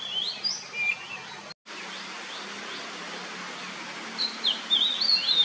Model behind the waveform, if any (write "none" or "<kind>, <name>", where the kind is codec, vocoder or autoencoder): none